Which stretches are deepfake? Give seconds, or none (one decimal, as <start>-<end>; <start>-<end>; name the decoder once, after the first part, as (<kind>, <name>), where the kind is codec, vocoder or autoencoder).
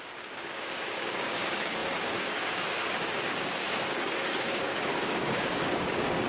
0.0-6.3 (codec, DAC)